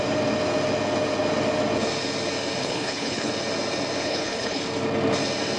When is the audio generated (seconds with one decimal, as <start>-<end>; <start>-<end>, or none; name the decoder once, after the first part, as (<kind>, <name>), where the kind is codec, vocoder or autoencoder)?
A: 2.6-3.3 (codec, HILCodec); 4.0-4.6